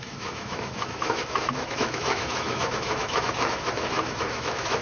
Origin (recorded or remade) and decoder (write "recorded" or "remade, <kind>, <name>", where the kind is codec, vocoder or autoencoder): remade, autoencoder, DAC-VAE